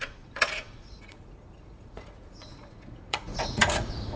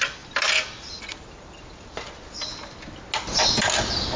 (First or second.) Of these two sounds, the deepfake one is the first